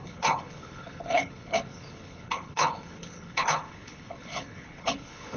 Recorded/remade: remade